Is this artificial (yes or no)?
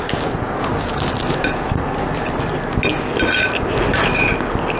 no